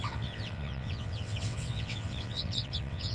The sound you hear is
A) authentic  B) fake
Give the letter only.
B